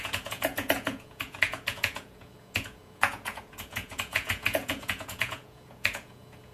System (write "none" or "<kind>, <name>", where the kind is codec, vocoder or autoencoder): vocoder, Vocos